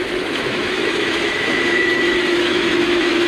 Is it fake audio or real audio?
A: fake